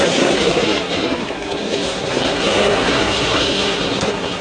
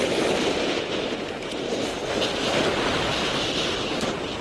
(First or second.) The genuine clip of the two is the second